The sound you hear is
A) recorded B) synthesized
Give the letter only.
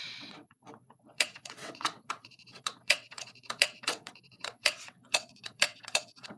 B